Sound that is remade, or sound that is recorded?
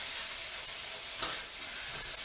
recorded